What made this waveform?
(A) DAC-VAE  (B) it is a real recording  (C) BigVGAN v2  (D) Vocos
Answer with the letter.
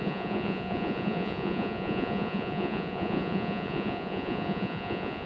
D